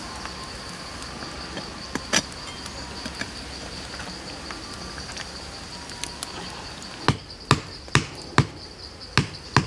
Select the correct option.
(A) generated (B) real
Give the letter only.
B